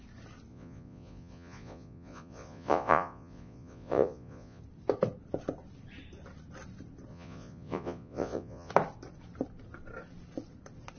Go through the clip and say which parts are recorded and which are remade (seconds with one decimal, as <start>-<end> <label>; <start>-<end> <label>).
0.0-0.5 recorded; 0.5-4.6 remade; 4.6-7.1 recorded; 7.1-8.7 remade; 8.7-11.0 recorded